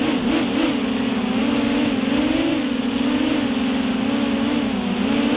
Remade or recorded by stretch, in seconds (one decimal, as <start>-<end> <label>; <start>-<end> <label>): 0.0-5.4 recorded

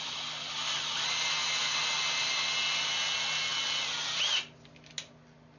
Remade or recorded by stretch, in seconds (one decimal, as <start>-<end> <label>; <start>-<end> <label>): 0.0-5.6 recorded

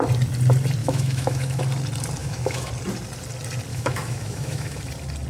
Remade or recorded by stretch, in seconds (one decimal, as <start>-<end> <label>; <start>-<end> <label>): 0.0-0.8 recorded; 0.8-1.6 remade; 1.6-2.2 recorded; 2.2-2.7 remade; 2.7-3.7 recorded; 3.7-4.8 remade; 4.8-5.3 recorded

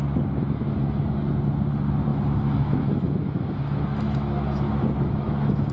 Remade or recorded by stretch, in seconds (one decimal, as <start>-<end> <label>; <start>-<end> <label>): 0.0-0.4 recorded; 0.4-1.0 remade; 1.0-2.1 recorded; 2.1-5.7 remade

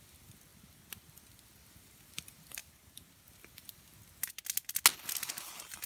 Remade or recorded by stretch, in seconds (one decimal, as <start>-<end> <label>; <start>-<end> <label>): 0.0-5.9 recorded

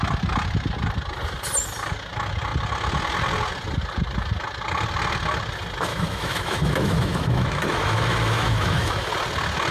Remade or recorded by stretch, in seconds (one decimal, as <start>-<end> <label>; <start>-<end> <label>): 0.0-5.9 recorded; 5.9-9.1 remade; 9.1-9.7 recorded

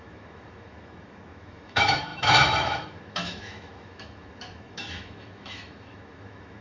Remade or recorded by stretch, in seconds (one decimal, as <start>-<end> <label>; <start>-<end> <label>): 0.0-6.6 remade

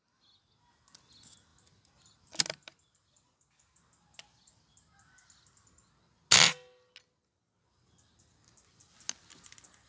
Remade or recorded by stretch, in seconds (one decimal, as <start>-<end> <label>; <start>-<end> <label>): 0.0-9.9 recorded